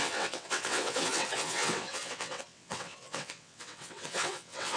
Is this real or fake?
fake